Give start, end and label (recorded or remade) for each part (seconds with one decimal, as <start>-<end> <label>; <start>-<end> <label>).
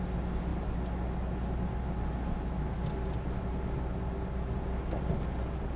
0.0-5.8 recorded